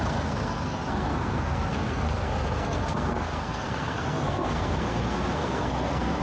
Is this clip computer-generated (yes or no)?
yes